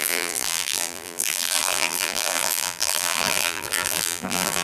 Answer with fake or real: fake